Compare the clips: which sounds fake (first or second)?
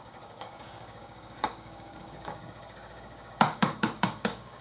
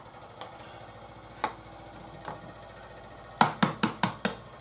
first